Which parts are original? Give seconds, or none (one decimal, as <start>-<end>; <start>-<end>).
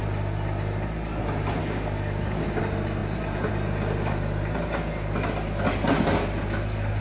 0.0-1.6; 2.6-7.0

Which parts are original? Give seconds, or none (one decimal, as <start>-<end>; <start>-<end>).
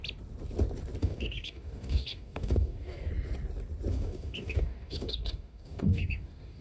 0.0-1.0; 3.1-3.9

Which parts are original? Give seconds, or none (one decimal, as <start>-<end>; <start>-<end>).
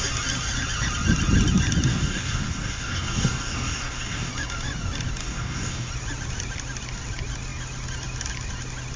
0.0-1.9; 4.3-5.2; 5.9-9.0